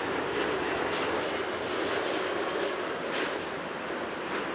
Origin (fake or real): real